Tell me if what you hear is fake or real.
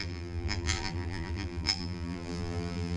fake